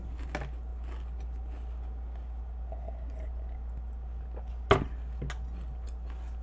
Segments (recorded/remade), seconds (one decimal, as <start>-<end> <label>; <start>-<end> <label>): 0.0-6.4 recorded